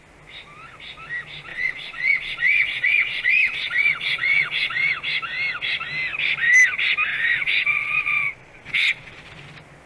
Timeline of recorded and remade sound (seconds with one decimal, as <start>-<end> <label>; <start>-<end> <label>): 0.0-1.5 recorded; 1.5-4.9 remade; 4.9-7.1 recorded; 7.1-9.2 remade; 9.2-9.9 recorded